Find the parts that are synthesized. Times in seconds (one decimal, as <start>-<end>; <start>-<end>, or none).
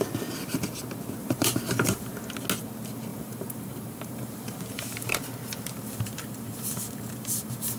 1.2-2.1; 3.1-7.8